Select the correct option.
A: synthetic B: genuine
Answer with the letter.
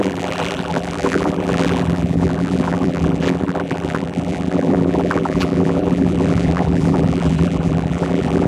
A